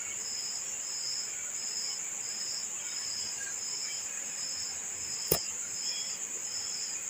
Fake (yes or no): no